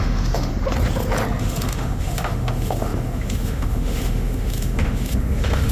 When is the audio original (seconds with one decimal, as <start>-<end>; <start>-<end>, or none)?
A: 0.5-1.4